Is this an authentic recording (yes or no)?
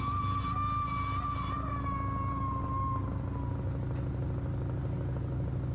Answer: yes